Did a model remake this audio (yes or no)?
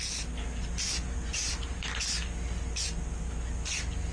no